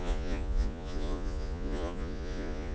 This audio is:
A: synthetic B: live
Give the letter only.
A